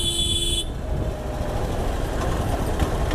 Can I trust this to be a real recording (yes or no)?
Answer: yes